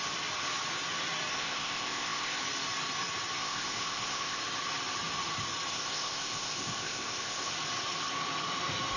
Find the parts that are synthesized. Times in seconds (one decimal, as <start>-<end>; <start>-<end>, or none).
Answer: 1.3-2.4; 3.4-4.4; 5.7-7.5